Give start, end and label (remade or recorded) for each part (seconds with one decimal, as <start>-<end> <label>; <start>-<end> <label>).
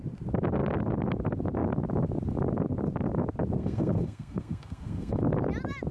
0.0-3.6 recorded; 3.6-5.2 remade; 5.2-5.9 recorded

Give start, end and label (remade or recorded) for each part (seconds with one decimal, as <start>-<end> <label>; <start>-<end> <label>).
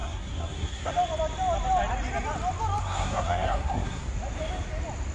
0.0-0.9 remade; 0.9-2.8 recorded; 2.8-4.1 remade; 4.1-5.1 recorded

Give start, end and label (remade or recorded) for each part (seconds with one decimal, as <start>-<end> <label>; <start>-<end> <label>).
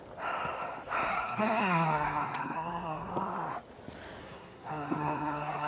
0.0-1.1 recorded; 1.1-3.1 remade; 3.1-4.2 recorded; 4.2-5.7 remade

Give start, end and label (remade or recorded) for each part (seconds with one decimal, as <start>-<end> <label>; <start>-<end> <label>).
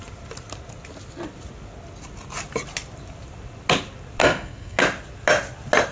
0.0-4.2 recorded; 4.2-4.8 remade; 4.8-5.9 recorded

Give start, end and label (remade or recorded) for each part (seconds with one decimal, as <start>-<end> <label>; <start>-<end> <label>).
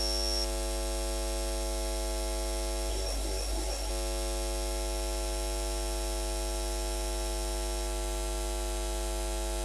0.0-2.9 recorded; 2.9-3.9 remade; 3.9-9.6 recorded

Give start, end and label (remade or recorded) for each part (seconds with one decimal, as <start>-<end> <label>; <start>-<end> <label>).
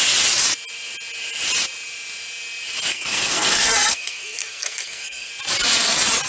0.0-2.9 recorded; 2.9-5.3 remade; 5.3-6.3 recorded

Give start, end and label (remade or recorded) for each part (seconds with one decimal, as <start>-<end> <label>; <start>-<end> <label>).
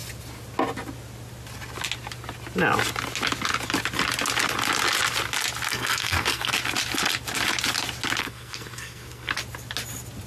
0.0-5.7 recorded; 5.7-6.5 remade; 6.5-8.2 recorded; 8.2-9.3 remade; 9.3-10.3 recorded